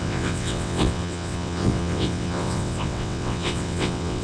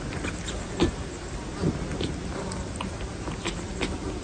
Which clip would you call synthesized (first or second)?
first